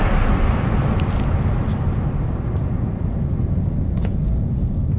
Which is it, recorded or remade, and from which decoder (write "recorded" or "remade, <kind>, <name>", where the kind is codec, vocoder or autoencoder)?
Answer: recorded